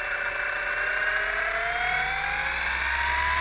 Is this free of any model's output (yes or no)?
yes